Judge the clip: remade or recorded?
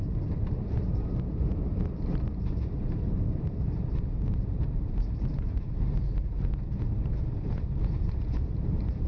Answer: remade